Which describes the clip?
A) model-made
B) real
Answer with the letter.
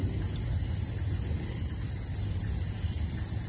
B